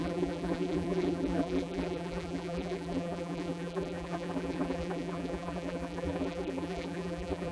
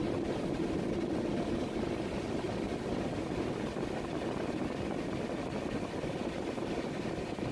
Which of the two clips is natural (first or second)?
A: second